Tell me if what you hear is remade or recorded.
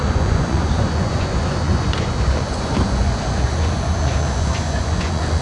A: remade